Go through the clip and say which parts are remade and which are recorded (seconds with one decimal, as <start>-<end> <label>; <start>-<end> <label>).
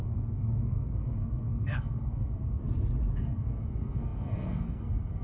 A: 0.0-2.6 remade; 2.6-3.2 recorded; 3.2-5.2 remade